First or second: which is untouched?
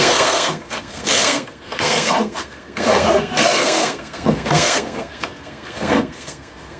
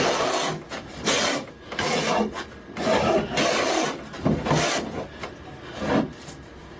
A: second